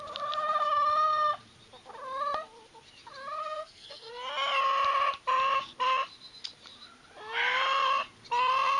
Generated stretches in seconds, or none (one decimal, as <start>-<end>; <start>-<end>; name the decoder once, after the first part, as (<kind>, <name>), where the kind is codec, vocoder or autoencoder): 3.4-4.1 (codec, SNAC)